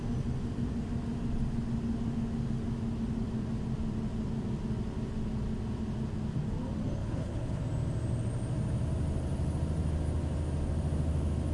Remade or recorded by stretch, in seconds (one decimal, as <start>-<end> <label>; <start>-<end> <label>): 0.0-7.0 recorded; 7.0-7.6 remade; 7.6-11.5 recorded